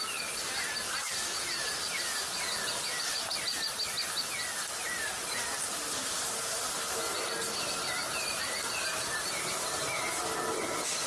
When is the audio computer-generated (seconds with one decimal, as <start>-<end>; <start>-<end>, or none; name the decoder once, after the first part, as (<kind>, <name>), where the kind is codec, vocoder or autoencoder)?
8.9-10.0 (vocoder, BigVGAN v2)